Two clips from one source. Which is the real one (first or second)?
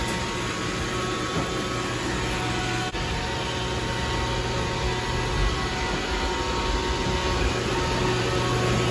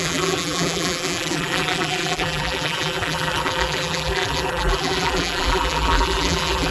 first